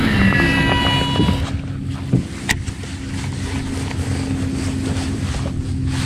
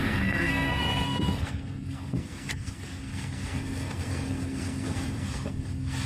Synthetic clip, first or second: second